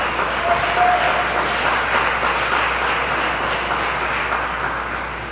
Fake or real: real